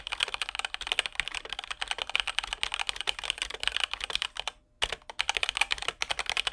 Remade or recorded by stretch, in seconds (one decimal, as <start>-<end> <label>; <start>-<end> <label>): 0.0-6.5 recorded